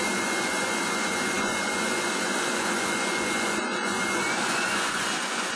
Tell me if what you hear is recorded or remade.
remade